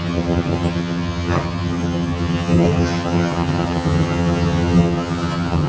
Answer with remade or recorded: remade